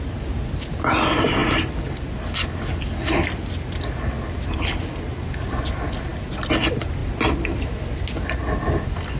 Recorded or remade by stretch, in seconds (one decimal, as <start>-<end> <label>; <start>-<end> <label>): 0.0-9.2 recorded